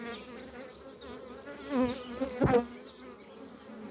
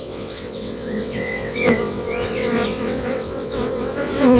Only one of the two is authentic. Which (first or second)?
first